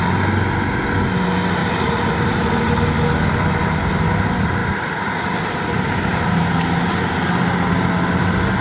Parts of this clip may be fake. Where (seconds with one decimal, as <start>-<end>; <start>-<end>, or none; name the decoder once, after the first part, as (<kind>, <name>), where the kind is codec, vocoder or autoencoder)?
1.6-2.4 (vocoder, BigVGAN v2); 4.6-7.0